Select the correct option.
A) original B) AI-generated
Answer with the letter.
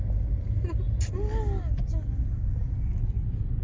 A